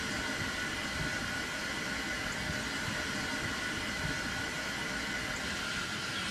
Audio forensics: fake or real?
real